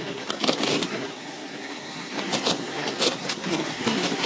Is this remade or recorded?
remade